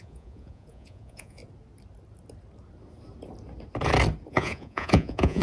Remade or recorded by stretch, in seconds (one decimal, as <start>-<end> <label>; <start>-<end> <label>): 0.0-1.4 remade; 1.4-4.3 recorded; 4.3-5.4 remade